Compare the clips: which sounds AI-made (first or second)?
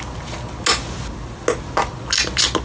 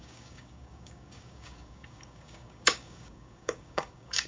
second